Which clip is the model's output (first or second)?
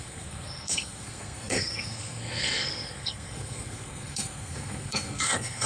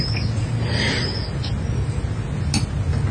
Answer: first